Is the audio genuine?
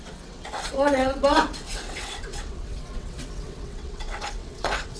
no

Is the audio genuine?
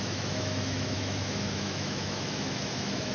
no